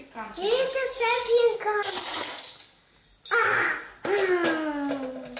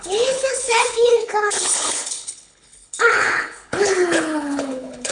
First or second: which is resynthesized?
second